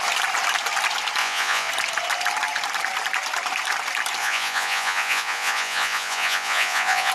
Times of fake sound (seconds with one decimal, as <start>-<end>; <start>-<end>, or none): 1.2-1.7; 4.2-7.1